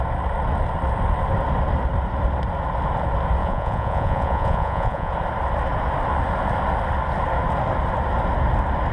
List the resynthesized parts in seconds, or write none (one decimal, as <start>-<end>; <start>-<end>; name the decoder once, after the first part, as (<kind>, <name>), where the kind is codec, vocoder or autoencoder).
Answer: 3.4-5.1 (vocoder, Vocos)